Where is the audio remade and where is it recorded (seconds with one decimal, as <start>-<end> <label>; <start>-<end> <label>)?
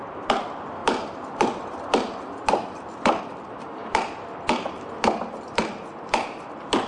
0.0-0.8 recorded; 0.8-3.2 remade; 3.2-6.9 recorded